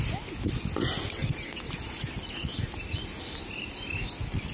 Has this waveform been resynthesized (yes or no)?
no